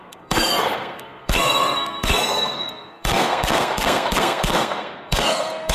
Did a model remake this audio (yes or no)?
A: yes